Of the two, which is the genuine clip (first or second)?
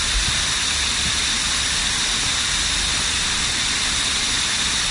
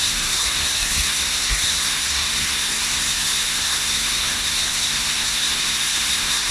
first